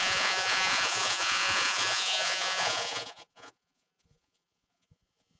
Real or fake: fake